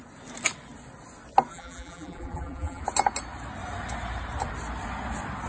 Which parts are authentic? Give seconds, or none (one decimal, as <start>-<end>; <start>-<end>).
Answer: 0.0-1.5; 2.8-5.5